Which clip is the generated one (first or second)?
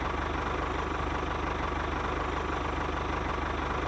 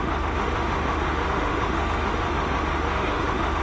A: second